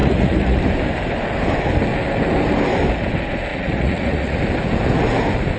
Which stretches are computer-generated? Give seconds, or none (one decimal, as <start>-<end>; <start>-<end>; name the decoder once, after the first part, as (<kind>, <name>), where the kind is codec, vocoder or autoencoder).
0.0-0.6 (vocoder, Vocos); 3.5-4.4